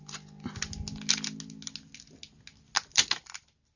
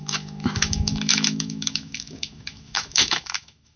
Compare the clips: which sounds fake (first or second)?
second